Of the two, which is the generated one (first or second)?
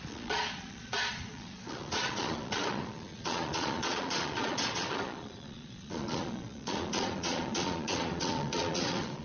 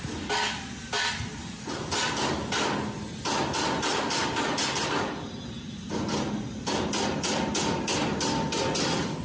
first